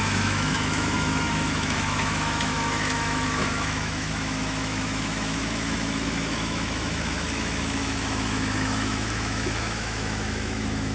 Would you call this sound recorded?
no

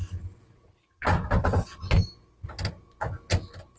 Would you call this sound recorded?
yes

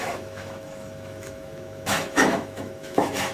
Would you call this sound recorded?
no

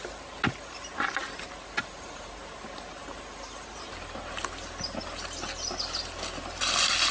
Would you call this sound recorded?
yes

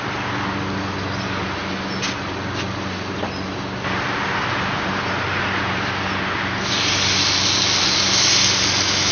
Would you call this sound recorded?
yes